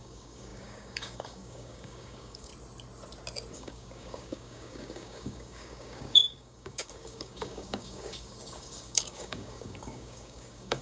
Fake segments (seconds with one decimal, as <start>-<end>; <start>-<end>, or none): 0.0-2.5; 3.5-10.8